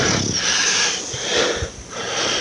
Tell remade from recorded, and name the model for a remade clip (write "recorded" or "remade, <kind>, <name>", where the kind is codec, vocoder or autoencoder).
recorded